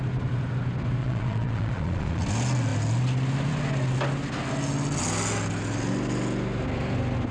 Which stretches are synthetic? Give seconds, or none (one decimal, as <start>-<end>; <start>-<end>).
1.0-2.2